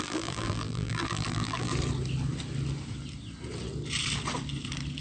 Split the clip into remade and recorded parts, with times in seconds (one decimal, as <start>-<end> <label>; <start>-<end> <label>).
0.0-1.7 remade; 1.7-5.0 recorded

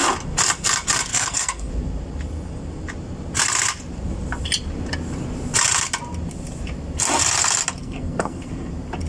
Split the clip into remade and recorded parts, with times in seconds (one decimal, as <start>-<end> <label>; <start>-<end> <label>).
0.0-1.1 recorded; 1.1-1.7 remade; 1.7-7.8 recorded; 7.8-8.7 remade; 8.7-9.1 recorded